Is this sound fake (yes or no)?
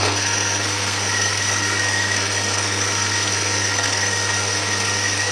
yes